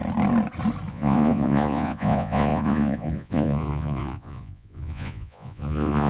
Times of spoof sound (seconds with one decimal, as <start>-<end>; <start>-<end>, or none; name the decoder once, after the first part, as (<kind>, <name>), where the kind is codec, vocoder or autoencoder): 0.9-6.1 (vocoder, Vocos)